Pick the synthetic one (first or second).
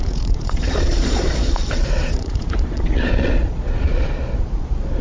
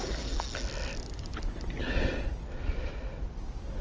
first